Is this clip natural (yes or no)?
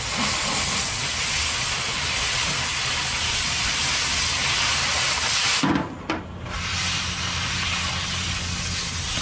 yes